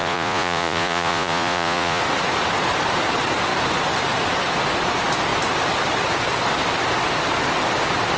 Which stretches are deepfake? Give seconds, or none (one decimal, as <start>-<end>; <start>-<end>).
0.0-2.0